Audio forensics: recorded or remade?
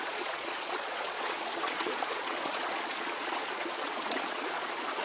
remade